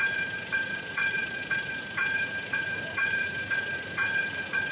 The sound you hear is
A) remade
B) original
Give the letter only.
A